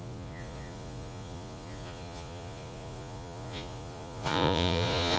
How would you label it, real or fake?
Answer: fake